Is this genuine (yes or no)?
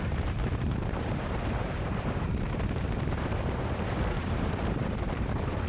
no